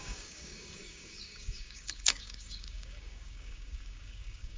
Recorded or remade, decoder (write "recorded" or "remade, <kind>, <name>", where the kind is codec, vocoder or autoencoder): remade, codec, DAC